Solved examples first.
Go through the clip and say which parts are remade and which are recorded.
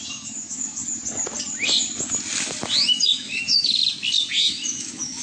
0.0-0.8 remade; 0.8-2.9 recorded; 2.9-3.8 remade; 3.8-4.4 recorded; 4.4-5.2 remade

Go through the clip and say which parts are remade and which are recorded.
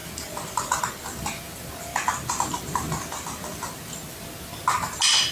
0.0-5.3 recorded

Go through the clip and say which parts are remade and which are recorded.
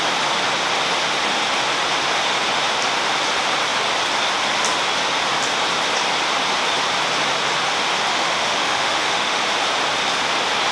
0.0-8.1 recorded; 8.1-9.4 remade; 9.4-10.7 recorded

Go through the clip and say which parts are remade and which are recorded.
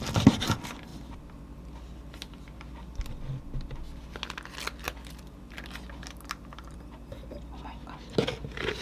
0.0-8.8 recorded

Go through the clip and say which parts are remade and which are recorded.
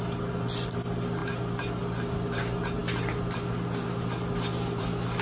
0.0-5.2 recorded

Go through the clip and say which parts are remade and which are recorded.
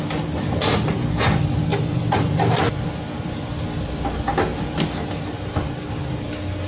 0.0-1.7 recorded; 1.7-5.7 remade; 5.7-6.7 recorded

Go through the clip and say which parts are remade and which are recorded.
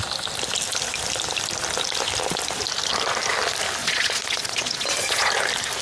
0.0-3.8 recorded; 3.8-5.3 remade; 5.3-5.8 recorded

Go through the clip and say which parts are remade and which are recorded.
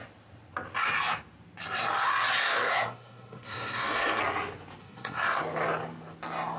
0.0-2.4 recorded; 2.4-4.2 remade; 4.2-4.8 recorded; 4.8-5.4 remade; 5.4-6.6 recorded